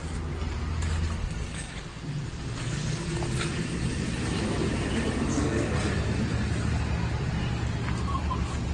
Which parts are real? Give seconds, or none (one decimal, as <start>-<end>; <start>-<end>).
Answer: 0.0-1.2; 2.0-5.3; 5.9-8.7